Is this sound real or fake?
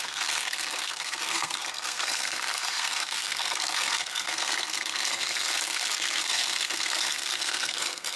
fake